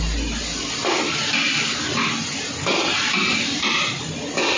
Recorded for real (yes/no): yes